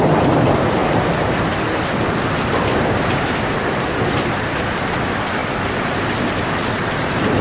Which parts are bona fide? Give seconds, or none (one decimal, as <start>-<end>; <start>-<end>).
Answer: 5.4-7.0